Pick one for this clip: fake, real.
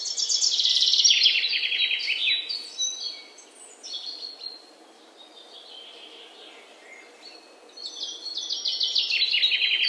real